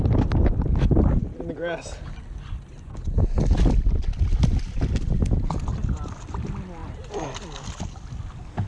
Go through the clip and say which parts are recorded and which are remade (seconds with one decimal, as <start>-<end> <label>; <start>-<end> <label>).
0.0-8.7 recorded